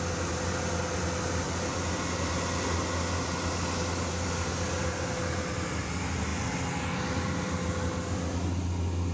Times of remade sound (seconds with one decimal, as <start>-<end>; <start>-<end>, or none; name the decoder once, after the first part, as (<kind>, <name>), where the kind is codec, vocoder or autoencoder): none